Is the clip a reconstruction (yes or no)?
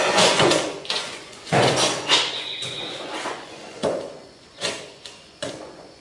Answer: yes